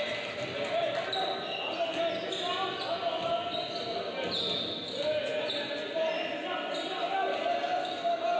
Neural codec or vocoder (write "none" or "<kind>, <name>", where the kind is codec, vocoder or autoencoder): none